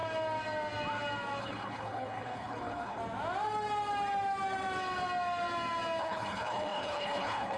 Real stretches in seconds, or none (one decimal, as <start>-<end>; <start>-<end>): 0.0-1.4; 3.0-6.0